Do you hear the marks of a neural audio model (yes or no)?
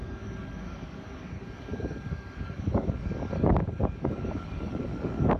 yes